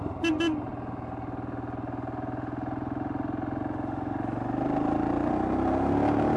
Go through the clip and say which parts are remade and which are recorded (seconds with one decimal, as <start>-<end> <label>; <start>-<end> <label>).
0.0-6.4 recorded